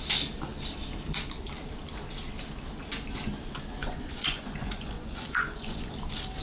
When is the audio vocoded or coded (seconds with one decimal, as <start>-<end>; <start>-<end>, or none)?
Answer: 3.8-5.9